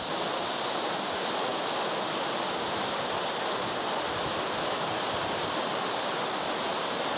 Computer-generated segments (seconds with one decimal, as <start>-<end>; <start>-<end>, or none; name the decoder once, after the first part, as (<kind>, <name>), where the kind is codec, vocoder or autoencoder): none